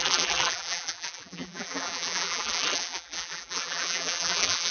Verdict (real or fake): fake